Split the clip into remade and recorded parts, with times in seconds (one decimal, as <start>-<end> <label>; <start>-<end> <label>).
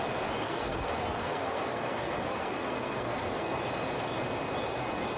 0.0-0.4 recorded; 0.4-3.5 remade; 3.5-5.2 recorded